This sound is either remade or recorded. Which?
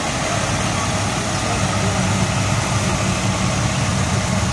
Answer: recorded